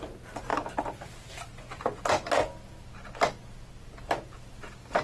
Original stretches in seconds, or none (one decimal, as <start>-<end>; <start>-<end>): 0.0-5.0